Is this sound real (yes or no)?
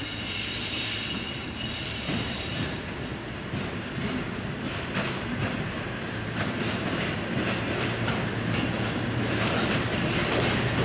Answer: no